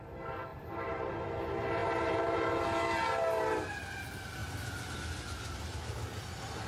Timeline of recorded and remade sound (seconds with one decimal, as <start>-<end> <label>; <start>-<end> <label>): 0.0-0.5 recorded; 0.5-1.1 remade; 1.1-1.8 recorded; 1.8-3.6 remade; 3.6-6.7 recorded